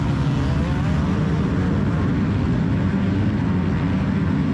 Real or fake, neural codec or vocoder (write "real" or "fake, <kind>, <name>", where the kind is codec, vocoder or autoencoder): real